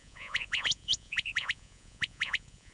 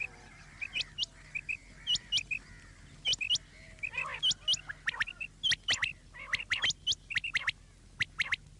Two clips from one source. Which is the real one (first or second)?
second